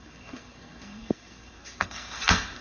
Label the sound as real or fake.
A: fake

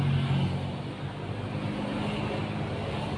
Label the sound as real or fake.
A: real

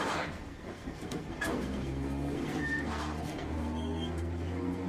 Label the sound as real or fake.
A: fake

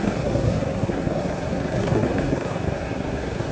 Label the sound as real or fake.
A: fake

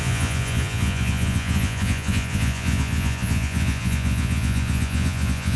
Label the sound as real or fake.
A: fake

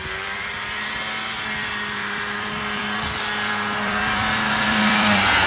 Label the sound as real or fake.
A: fake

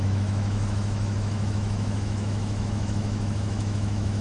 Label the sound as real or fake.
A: fake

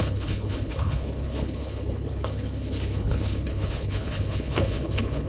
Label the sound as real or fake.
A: fake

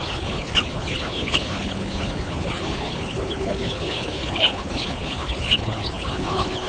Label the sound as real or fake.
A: fake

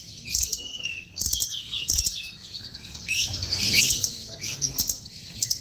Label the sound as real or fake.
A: fake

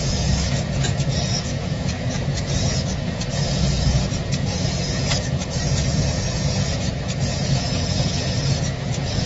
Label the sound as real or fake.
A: fake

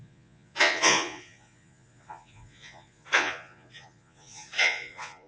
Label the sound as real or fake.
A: fake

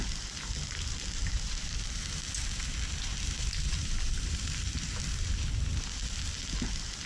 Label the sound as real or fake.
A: fake